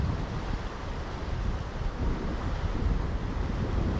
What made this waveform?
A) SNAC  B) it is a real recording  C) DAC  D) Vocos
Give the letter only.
B